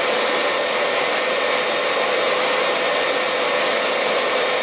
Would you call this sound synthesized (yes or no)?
no